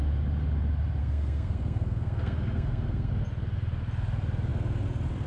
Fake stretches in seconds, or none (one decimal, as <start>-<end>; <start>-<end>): 1.0-3.1